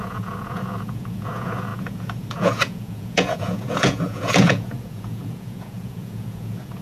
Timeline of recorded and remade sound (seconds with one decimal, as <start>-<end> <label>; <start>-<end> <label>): 0.0-6.8 remade